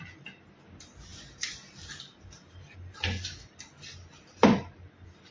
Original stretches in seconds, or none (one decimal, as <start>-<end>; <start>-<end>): 0.0-5.3